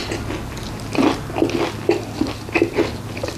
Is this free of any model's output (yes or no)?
yes